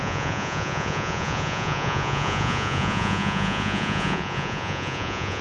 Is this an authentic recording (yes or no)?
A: no